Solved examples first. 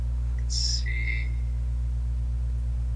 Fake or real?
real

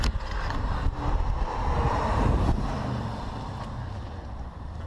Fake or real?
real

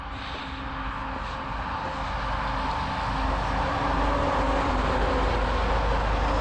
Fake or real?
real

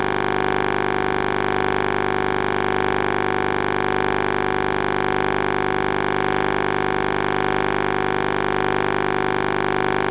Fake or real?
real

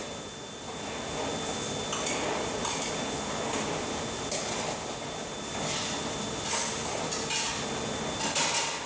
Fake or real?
real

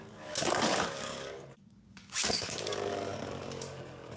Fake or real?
fake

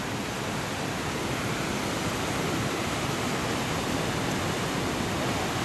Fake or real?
real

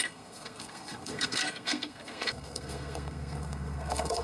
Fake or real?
fake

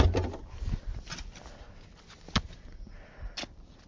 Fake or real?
real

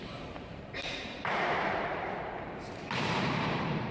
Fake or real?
fake